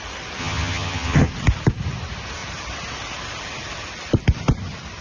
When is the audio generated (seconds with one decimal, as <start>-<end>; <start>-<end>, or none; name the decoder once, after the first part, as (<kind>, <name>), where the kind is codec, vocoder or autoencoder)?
0.4-1.3 (vocoder, HiFi-GAN)